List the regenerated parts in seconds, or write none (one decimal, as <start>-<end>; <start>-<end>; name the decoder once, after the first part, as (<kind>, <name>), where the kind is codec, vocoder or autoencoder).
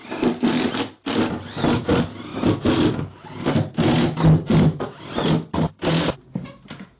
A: none